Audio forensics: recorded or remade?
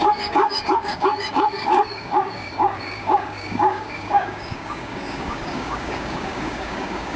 remade